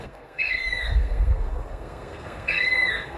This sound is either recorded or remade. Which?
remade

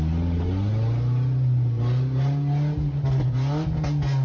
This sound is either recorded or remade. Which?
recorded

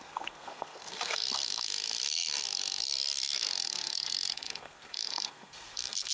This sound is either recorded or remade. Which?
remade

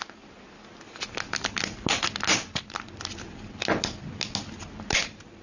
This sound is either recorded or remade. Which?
recorded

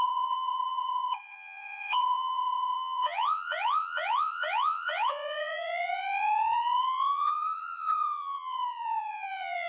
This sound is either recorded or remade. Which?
remade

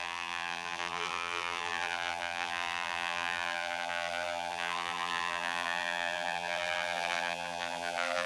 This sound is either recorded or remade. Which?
remade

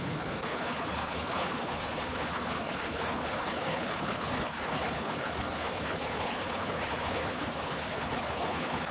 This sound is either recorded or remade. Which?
remade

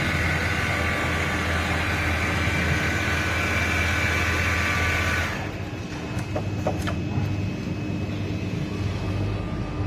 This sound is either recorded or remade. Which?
recorded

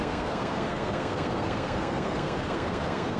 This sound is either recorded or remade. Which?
remade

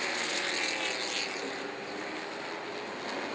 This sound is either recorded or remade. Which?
recorded